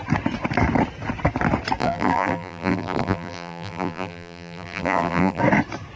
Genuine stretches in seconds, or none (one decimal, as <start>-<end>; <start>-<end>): 0.0-1.8; 5.4-6.0

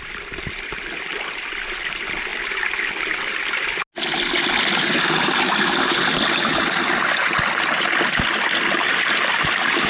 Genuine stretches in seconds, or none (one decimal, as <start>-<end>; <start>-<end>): 0.0-9.9

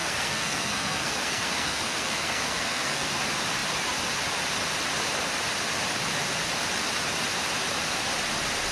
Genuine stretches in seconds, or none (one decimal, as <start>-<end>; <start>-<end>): 3.1-8.7